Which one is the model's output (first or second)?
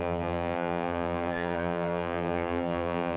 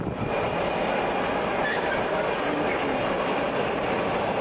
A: first